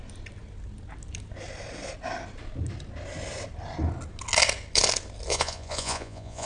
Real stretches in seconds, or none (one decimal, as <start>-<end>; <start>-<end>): 0.0-5.3